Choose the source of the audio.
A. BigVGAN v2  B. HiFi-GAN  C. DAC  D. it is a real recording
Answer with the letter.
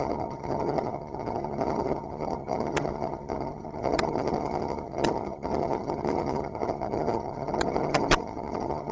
B